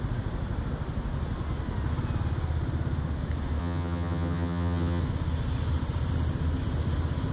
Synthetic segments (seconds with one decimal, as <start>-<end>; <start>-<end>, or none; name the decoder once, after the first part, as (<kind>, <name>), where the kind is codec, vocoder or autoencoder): 3.6-5.0 (vocoder, HiFi-GAN)

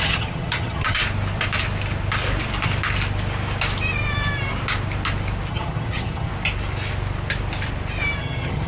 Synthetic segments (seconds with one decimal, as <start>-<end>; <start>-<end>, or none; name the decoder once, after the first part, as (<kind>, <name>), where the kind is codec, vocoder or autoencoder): 0.0-1.0 (vocoder, HiFi-GAN); 5.5-6.3; 8.2-8.7